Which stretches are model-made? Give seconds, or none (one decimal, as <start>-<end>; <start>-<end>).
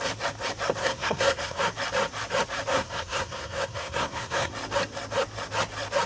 0.8-1.6; 2.7-4.5